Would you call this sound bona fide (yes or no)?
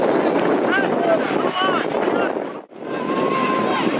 yes